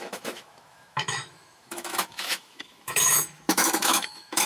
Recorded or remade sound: remade